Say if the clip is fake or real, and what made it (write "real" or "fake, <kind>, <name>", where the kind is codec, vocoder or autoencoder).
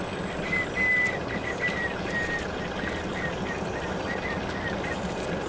real